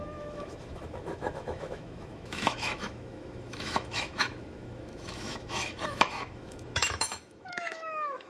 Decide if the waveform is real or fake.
fake